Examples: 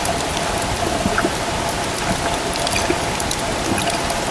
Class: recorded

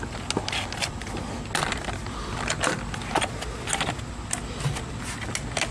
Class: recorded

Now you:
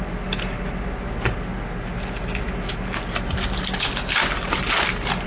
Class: recorded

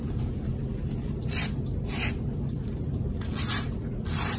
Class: remade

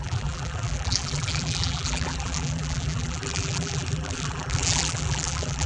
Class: remade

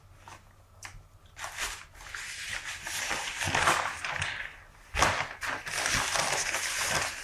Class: recorded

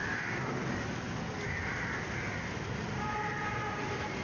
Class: recorded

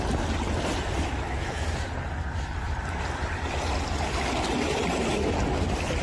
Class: recorded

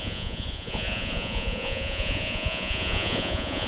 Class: remade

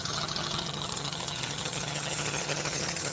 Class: remade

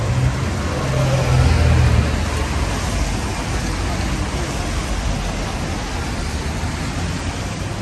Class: recorded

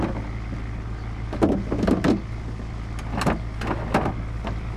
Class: recorded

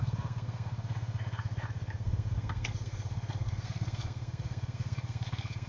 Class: remade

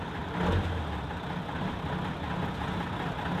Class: recorded